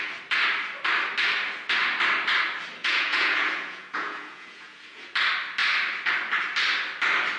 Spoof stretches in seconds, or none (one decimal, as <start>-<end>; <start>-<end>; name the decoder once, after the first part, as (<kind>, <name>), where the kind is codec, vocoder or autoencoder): 2.8-5.1 (vocoder, Vocos)